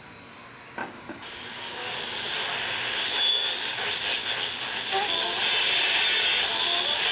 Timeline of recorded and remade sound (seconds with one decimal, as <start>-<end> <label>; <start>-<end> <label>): 0.0-0.8 recorded; 0.8-2.3 remade; 2.3-3.3 recorded; 3.3-3.8 remade; 3.8-7.1 recorded